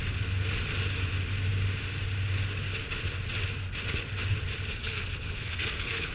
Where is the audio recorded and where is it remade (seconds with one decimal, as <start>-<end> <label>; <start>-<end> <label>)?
0.0-4.7 recorded; 4.7-6.1 remade